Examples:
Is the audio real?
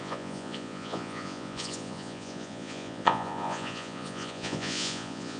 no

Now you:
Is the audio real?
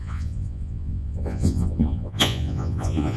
no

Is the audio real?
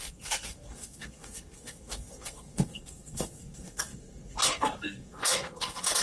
no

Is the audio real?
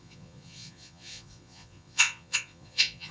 no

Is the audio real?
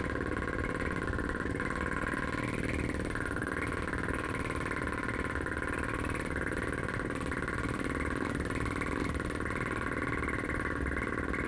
yes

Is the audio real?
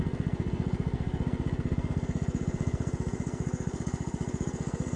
no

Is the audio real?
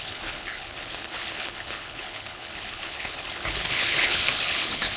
no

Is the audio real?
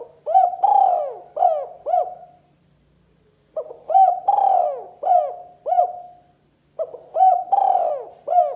yes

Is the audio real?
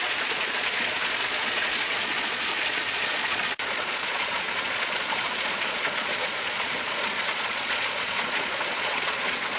no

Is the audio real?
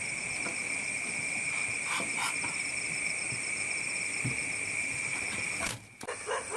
yes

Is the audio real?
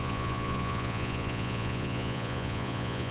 no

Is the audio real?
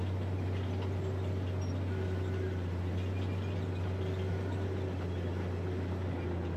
yes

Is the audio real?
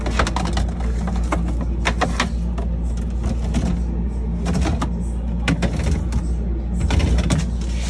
yes